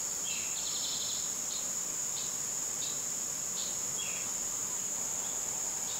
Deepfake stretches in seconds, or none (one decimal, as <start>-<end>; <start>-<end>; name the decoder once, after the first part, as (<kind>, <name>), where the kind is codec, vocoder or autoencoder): none